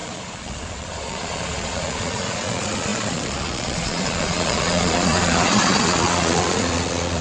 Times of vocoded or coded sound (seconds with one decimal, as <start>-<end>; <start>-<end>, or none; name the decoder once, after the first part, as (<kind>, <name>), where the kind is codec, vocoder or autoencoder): 0.0-7.2 (vocoder, Vocos)